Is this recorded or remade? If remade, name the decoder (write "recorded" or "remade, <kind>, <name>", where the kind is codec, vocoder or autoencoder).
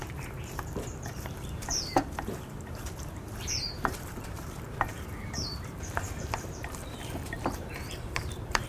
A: remade, vocoder, BigVGAN v2